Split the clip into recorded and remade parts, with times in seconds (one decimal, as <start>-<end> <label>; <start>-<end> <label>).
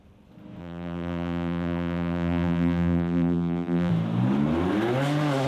0.0-0.6 recorded; 0.6-3.9 remade; 3.9-5.5 recorded